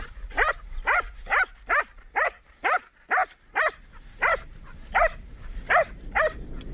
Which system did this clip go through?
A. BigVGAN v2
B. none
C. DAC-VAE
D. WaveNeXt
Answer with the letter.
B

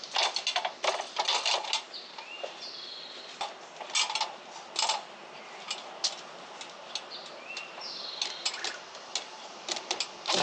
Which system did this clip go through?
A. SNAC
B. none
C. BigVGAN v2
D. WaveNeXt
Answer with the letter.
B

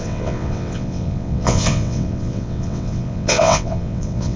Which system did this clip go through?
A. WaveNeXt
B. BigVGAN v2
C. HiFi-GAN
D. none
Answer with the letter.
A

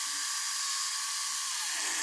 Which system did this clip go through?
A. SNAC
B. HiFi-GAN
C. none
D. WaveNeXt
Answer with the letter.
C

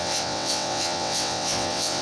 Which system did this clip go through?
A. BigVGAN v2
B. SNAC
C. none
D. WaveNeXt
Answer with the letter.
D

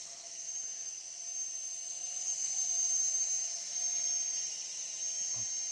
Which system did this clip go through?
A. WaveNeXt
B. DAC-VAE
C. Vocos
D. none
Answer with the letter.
D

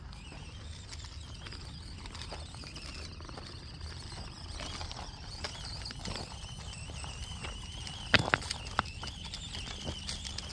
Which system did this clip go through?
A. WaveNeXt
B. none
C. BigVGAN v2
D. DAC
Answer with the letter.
B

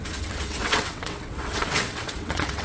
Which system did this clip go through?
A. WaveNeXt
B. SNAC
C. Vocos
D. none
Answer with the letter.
A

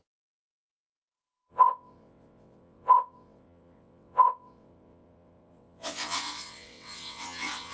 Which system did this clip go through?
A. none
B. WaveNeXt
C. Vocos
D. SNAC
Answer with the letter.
B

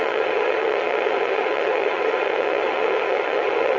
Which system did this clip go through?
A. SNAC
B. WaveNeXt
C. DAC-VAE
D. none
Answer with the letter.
B